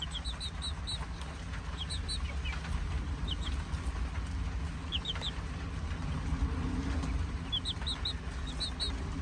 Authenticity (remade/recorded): recorded